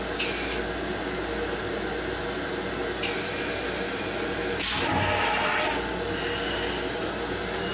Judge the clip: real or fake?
real